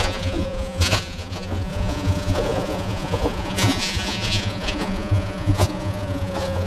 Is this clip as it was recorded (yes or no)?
no